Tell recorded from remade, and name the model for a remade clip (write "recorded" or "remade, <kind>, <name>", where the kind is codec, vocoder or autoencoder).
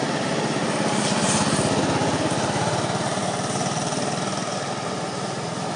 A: recorded